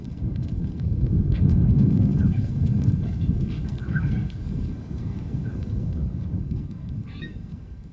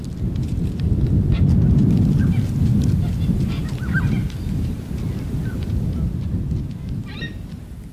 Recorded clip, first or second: second